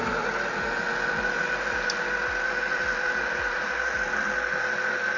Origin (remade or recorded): recorded